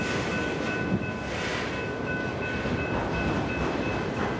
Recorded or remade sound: recorded